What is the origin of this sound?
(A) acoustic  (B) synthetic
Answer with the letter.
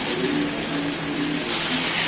A